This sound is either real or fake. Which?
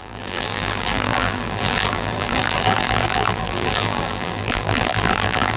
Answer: fake